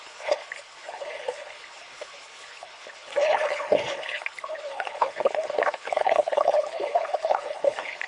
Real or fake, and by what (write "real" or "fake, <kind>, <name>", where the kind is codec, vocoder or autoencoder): fake, codec, HILCodec